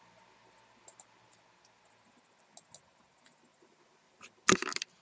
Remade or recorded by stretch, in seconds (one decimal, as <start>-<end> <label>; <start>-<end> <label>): 0.0-5.0 recorded